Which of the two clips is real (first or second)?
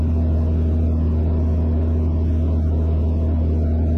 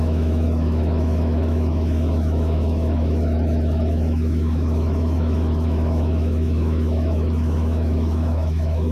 first